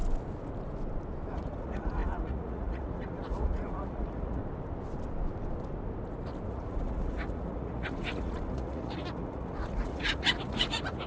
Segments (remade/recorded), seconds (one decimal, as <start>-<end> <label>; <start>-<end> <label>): 0.0-1.3 recorded; 1.3-4.4 remade; 4.4-6.5 recorded; 6.5-11.1 remade

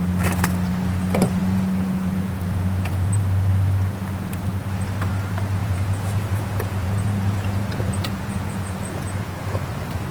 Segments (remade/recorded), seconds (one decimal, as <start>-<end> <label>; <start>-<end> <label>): 0.0-1.4 recorded; 1.4-3.2 remade; 3.2-5.6 recorded; 5.6-9.3 remade; 9.3-10.1 recorded